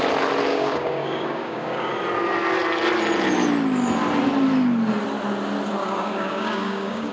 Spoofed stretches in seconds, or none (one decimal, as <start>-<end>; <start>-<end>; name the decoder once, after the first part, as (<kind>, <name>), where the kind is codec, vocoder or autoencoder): 0.5-1.9 (codec, DAC); 5.8-7.1